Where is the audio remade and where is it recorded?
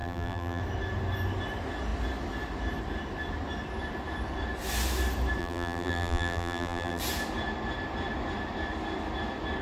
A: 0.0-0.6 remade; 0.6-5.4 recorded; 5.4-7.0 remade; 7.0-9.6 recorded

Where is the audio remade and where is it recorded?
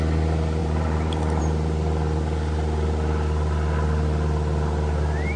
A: 0.0-0.6 recorded; 0.6-1.4 remade; 1.4-5.4 recorded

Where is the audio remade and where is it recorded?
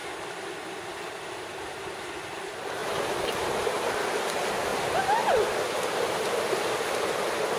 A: 0.0-2.8 recorded; 2.8-4.1 remade; 4.1-7.6 recorded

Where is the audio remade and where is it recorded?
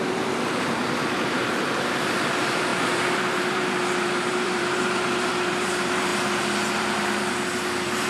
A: 0.0-0.8 remade; 0.8-1.3 recorded; 1.3-6.1 remade; 6.1-6.7 recorded; 6.7-8.1 remade